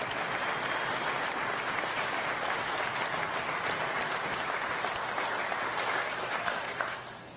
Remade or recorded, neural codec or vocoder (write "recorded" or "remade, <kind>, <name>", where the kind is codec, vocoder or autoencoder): recorded